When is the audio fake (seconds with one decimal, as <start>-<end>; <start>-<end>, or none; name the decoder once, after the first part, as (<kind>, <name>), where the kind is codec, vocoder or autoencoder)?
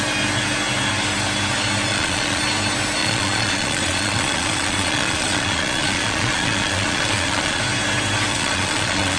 1.9-2.4 (vocoder, Vocos); 3.0-7.6; 8.3-9.2